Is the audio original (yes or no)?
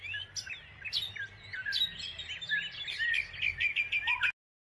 yes